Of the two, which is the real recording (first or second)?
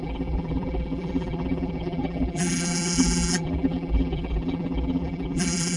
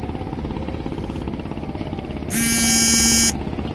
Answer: second